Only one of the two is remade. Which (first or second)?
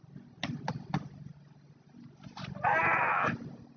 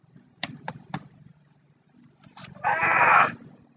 second